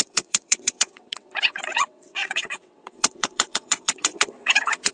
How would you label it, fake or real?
fake